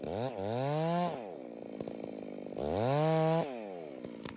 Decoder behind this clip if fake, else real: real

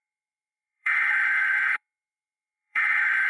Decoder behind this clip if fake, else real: fake, autoencoder, DAC-VAE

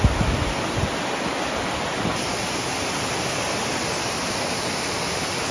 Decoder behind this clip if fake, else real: real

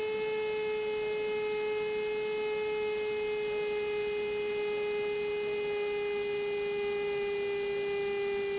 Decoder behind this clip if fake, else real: real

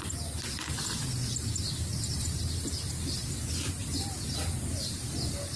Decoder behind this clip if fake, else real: real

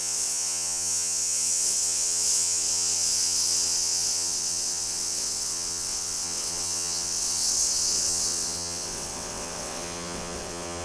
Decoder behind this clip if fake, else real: fake, vocoder, WaveNeXt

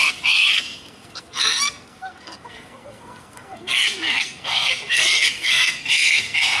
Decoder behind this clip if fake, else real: fake, codec, SNAC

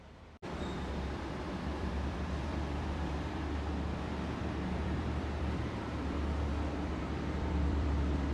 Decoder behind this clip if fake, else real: fake, vocoder, BigVGAN v2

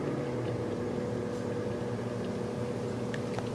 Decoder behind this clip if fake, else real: real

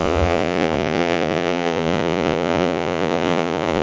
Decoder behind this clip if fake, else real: fake, vocoder, Vocos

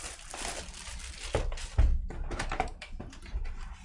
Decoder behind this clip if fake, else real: real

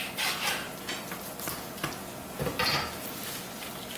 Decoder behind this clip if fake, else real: real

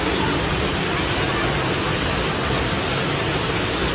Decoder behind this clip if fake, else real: real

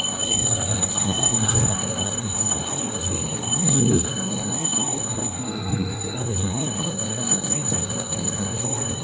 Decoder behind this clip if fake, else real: fake, codec, SNAC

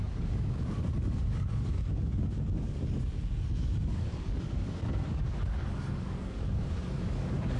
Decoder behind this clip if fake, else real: fake, codec, DAC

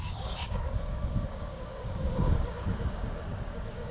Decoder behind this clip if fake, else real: fake, codec, DAC